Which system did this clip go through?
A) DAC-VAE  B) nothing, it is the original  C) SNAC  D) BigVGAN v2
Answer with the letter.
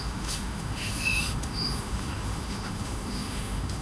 A